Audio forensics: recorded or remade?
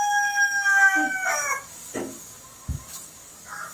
remade